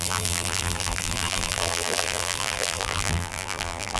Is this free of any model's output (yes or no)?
no